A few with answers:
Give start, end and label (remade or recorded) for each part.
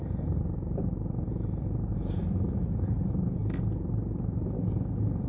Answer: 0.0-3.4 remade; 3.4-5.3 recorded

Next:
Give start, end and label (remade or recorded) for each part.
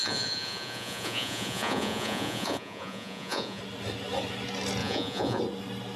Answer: 0.0-3.6 remade; 3.6-4.8 recorded; 4.8-5.4 remade; 5.4-6.0 recorded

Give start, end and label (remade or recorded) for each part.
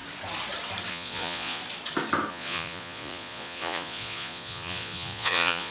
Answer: 0.0-0.9 recorded; 0.9-1.6 remade; 1.6-2.3 recorded; 2.3-5.7 remade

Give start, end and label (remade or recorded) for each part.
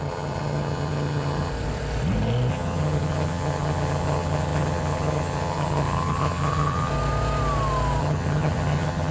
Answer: 0.0-1.5 remade; 1.5-2.5 recorded; 2.5-6.9 remade; 6.9-8.0 recorded; 8.0-9.1 remade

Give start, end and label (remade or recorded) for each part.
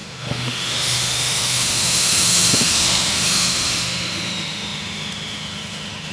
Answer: 0.0-6.1 remade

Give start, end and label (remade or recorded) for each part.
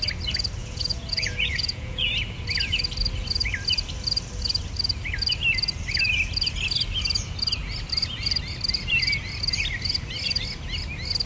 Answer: 0.0-0.6 recorded; 0.6-2.1 remade; 2.1-11.3 recorded